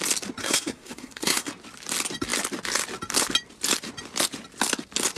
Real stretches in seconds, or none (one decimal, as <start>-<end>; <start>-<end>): 0.0-0.4; 1.5-5.2